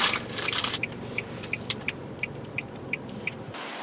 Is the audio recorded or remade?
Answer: remade